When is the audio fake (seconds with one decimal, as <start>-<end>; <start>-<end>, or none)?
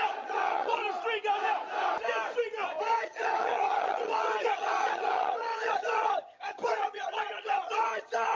0.0-0.8; 2.8-8.3